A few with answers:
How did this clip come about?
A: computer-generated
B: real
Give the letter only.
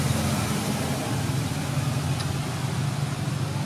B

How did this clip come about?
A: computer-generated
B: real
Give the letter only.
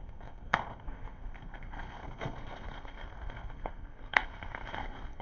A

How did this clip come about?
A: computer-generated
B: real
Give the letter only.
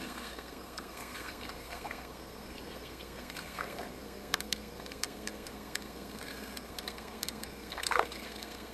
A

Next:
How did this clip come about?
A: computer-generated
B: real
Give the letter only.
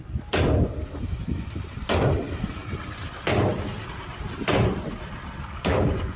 B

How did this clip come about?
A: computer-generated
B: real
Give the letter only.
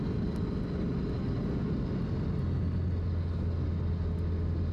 B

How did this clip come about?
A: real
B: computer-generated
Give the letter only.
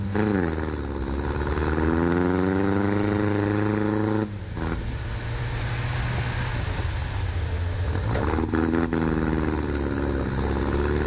A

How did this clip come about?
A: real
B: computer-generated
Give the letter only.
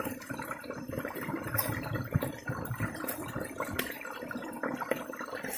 A